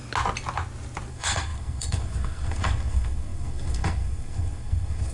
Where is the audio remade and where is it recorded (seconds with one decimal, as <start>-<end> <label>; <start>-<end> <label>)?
0.0-1.1 recorded; 1.1-5.1 remade